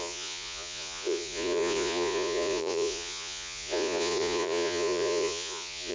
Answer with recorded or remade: remade